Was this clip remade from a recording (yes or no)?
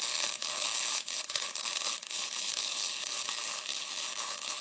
yes